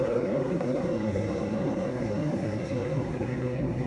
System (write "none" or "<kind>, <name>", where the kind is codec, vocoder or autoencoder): codec, SNAC